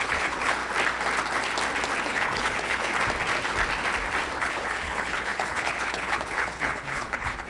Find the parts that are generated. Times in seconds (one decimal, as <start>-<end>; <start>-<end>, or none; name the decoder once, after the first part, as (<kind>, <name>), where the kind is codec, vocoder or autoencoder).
0.0-0.6 (codec, HILCodec); 2.0-2.9; 4.4-7.5